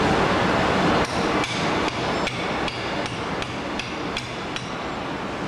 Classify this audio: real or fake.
real